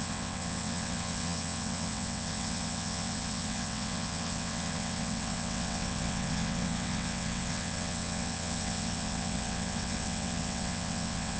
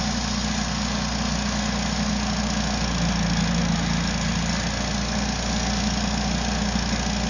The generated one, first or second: first